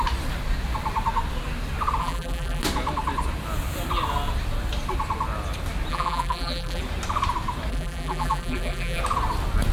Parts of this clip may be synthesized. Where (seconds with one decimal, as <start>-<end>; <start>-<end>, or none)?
2.0-2.6; 5.9-6.8; 7.7-9.0